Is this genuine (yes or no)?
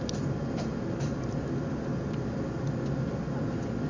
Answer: yes